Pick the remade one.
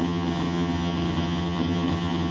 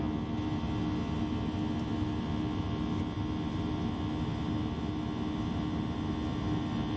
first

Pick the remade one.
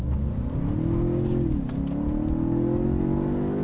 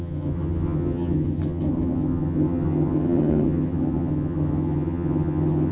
second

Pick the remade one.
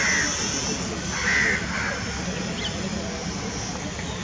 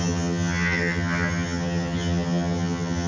second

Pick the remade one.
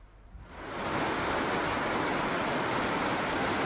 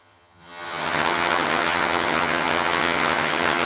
second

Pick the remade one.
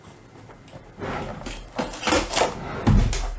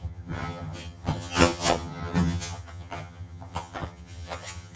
second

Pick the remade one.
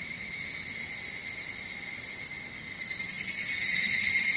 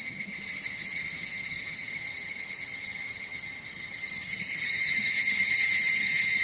second